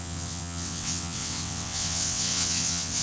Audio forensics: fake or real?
fake